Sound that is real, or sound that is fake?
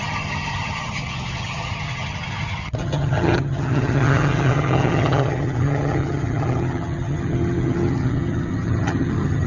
fake